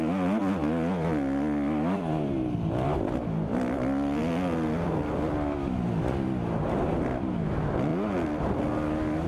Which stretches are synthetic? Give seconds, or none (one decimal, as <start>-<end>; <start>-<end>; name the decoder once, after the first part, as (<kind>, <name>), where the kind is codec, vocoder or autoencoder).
none